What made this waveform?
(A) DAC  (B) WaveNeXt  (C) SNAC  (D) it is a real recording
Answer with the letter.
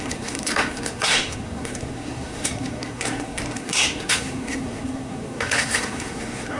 C